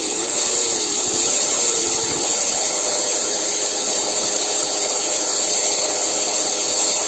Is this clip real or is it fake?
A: fake